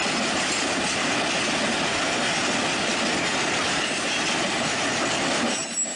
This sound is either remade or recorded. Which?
recorded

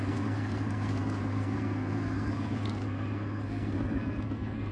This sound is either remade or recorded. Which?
remade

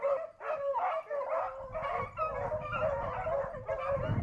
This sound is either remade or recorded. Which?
recorded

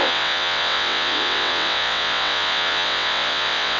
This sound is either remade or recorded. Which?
remade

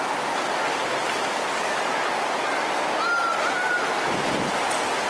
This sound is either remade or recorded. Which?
recorded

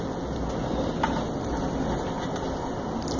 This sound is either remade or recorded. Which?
recorded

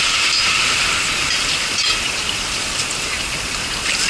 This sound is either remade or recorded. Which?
recorded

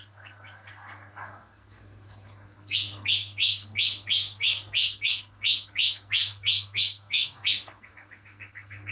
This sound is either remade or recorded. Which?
remade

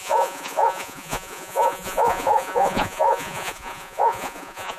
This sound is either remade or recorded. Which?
remade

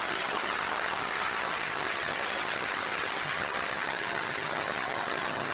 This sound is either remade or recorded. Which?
remade